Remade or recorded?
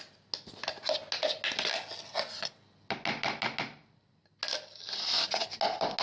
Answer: recorded